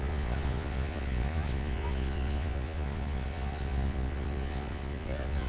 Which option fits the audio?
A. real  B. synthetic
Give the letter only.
B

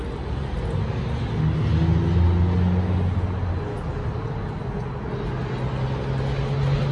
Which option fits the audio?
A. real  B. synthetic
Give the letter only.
A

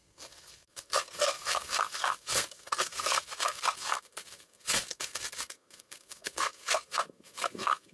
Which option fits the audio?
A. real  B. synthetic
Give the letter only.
B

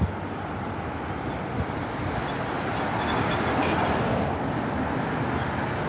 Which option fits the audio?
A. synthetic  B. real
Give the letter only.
B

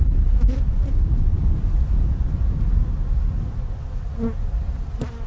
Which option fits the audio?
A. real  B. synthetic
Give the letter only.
A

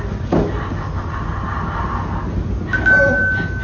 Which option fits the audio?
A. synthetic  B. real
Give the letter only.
B